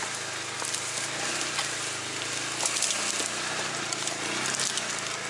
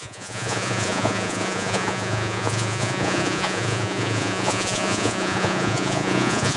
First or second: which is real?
first